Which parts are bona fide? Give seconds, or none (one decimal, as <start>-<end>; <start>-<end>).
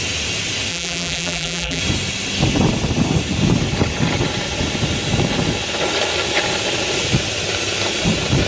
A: 0.0-0.7; 1.8-8.5